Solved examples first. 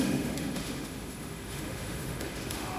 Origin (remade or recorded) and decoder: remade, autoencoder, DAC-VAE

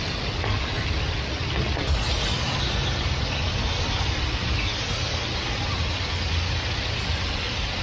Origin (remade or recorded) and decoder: recorded